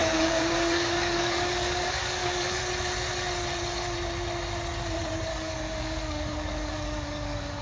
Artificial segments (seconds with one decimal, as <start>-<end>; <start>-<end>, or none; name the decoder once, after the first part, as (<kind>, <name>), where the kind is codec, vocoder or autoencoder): 0.0-2.6 (codec, DAC); 5.3-7.6